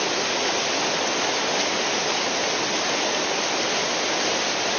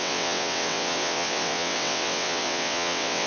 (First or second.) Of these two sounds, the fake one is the second